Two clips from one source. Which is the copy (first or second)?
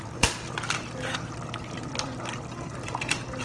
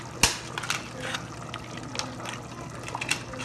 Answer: first